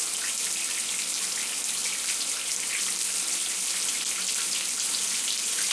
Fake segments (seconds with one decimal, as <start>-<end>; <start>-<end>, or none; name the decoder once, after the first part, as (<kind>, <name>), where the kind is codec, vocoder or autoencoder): none